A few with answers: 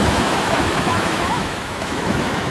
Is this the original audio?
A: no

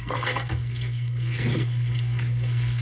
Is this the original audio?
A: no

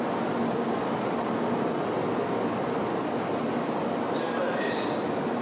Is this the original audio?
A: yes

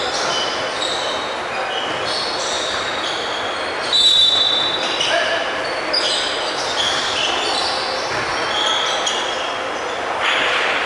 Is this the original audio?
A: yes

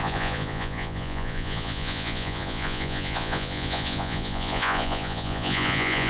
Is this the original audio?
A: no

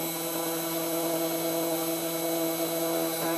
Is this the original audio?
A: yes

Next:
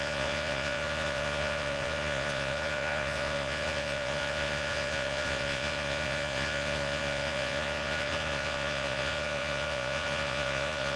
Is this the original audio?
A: no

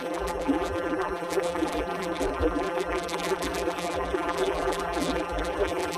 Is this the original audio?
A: no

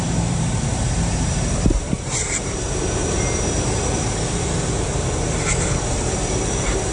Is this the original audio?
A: no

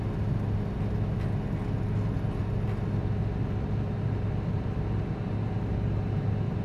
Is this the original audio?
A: yes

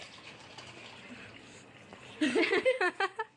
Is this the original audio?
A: yes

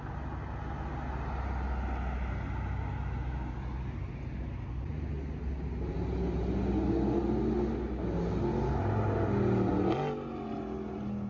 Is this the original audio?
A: yes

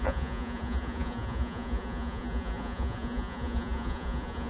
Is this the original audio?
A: no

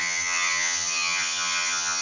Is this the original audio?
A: no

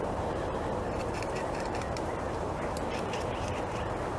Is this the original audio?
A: no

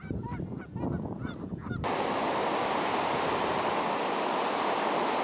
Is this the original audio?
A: yes